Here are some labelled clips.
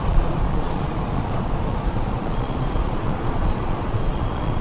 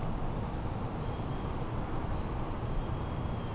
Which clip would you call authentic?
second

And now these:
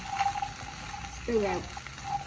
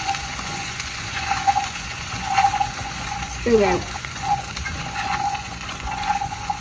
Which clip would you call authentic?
first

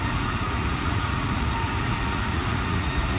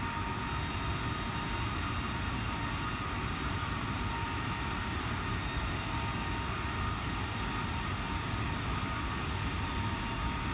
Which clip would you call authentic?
second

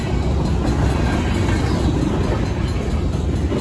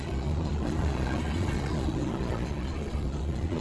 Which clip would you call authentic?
first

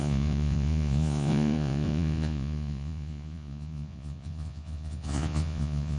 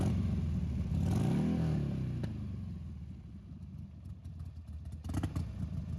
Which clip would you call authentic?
second